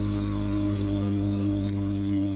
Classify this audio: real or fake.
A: fake